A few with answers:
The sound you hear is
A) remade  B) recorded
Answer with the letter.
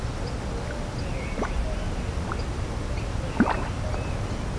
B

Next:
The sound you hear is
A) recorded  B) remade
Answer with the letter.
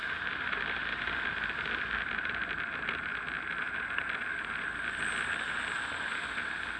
A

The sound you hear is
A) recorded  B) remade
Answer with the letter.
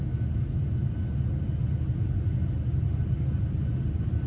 A